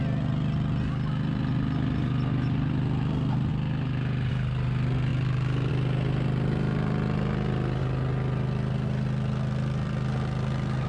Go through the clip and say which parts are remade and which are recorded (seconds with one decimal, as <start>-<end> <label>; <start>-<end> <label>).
0.0-10.9 recorded